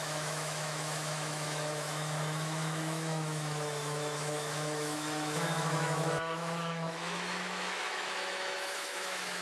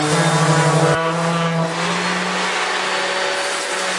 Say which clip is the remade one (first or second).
first